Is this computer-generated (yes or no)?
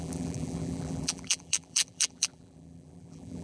yes